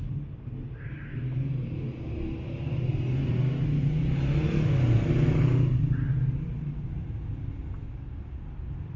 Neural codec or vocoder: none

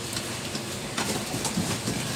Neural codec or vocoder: none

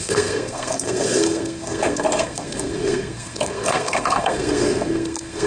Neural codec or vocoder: codec, SNAC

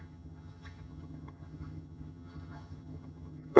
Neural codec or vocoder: vocoder, HiFi-GAN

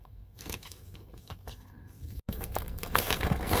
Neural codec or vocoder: codec, SNAC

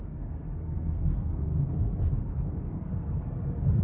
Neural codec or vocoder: codec, SNAC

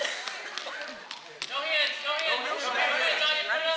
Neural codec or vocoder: none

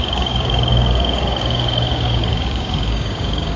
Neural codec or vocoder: codec, DAC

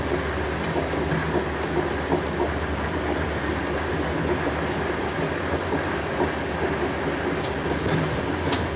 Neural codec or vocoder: none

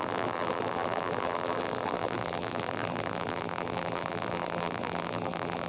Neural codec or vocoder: vocoder, BigVGAN v2